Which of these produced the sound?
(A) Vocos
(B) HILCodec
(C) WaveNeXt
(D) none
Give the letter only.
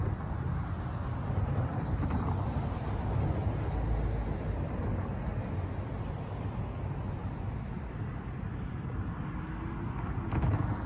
D